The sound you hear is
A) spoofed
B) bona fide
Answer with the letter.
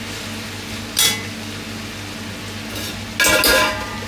B